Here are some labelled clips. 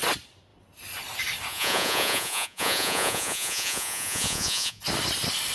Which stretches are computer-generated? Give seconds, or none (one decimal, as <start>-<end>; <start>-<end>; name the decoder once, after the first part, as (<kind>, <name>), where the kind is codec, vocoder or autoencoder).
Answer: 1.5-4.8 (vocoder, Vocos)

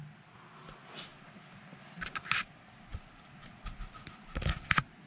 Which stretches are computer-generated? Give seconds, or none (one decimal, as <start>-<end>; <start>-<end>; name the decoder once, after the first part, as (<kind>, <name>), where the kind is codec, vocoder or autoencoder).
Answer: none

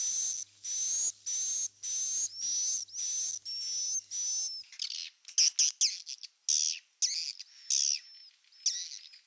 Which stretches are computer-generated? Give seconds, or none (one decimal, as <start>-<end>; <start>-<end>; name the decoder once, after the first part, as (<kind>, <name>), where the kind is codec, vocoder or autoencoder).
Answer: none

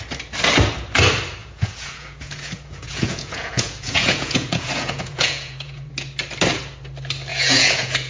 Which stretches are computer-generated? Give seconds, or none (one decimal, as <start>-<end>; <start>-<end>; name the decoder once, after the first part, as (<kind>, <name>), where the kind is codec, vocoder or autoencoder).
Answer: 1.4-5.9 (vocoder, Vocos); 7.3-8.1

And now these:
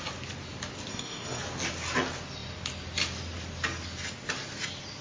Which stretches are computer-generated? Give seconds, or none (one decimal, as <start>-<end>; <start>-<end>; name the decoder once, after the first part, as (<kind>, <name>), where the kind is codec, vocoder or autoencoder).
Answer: 0.9-1.4 (codec, DAC)